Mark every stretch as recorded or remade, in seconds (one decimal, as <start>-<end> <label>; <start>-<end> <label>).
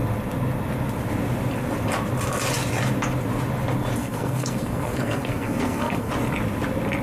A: 0.0-4.0 recorded; 4.0-6.1 remade; 6.1-7.0 recorded